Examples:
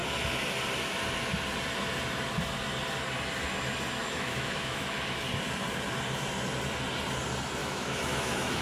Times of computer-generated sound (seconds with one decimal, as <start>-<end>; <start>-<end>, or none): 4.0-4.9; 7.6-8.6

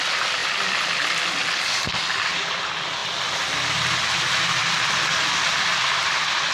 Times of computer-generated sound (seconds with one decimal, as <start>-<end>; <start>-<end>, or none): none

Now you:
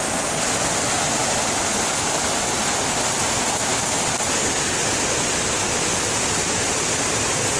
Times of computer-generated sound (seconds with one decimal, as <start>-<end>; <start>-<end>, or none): 3.7-7.6